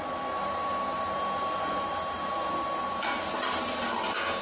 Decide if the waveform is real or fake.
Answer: real